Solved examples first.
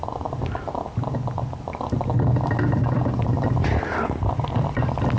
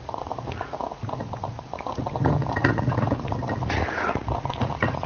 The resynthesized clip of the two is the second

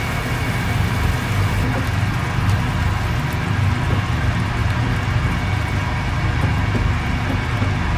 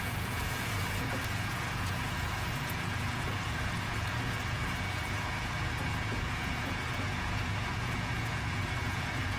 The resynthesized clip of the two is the second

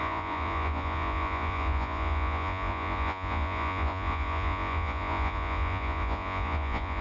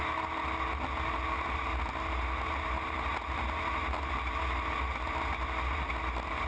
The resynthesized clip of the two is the first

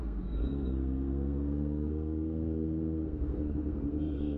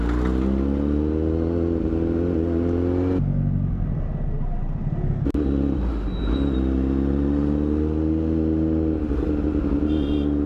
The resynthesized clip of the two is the first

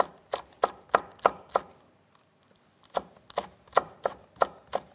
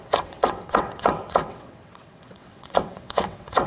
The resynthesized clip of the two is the second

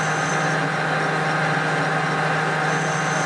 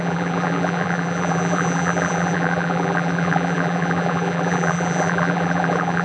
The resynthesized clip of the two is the second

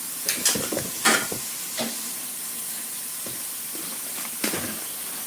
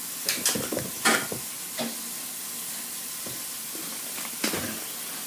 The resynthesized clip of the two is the first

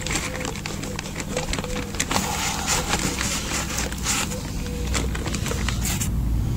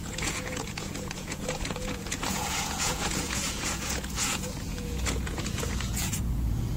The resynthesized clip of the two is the second